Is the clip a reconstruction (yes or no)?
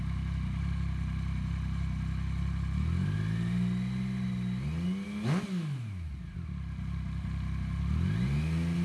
no